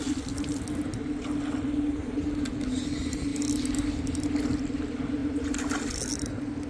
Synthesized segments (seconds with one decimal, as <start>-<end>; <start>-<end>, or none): none